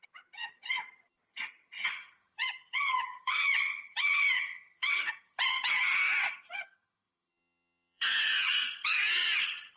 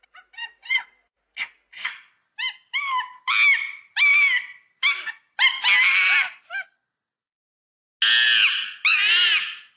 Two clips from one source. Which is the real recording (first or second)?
second